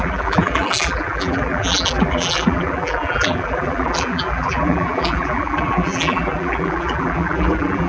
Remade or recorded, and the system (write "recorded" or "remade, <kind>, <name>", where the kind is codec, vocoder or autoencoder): remade, vocoder, BigVGAN v2